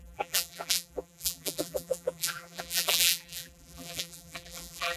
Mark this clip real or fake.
fake